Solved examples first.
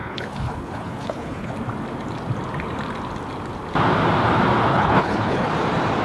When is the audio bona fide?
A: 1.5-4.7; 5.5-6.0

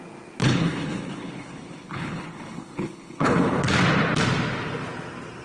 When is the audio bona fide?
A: 0.0-0.4; 3.6-5.4

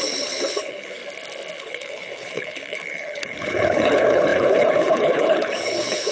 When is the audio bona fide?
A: 1.0-1.6

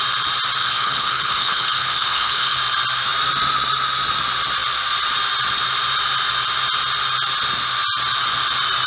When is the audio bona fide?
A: 0.0-0.6; 2.6-8.9

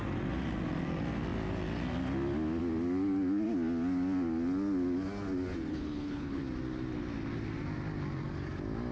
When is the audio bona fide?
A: 0.0-5.7; 6.4-8.9

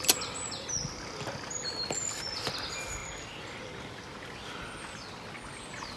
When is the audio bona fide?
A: 0.0-6.0

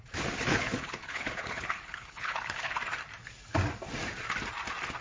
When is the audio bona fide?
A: 0.0-0.5; 2.8-5.0